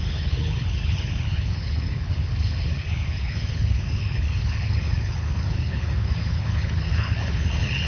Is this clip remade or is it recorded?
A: remade